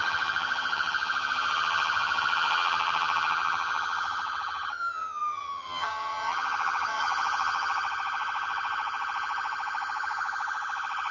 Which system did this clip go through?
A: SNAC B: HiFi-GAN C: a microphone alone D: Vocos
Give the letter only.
B